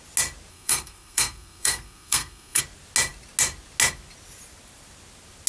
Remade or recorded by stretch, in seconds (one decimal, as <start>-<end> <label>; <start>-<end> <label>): 0.0-0.5 recorded; 0.5-2.6 remade; 2.6-5.5 recorded